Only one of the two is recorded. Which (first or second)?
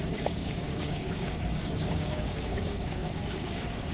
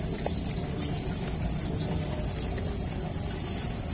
second